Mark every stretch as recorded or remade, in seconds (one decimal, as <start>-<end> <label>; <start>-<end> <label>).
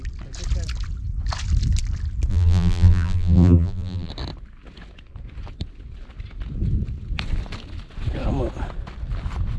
0.0-2.3 recorded; 2.3-4.1 remade; 4.1-9.6 recorded